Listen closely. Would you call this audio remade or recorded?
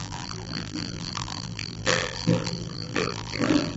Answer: remade